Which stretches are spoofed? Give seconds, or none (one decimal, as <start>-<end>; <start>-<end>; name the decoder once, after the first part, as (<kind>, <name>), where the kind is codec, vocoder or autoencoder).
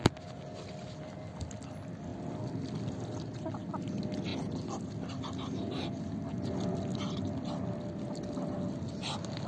none